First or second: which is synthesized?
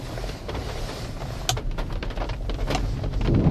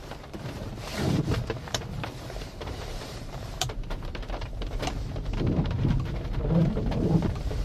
second